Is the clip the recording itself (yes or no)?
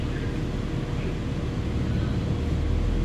yes